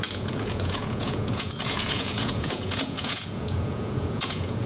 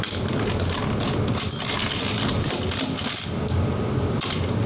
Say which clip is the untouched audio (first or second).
second